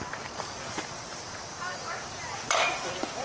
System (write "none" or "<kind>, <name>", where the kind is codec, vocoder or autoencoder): none